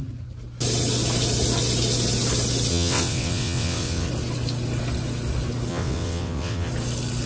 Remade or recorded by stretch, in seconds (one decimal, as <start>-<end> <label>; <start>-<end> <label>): 0.0-2.7 recorded; 2.7-4.1 remade; 4.1-5.7 recorded; 5.7-6.7 remade; 6.7-7.3 recorded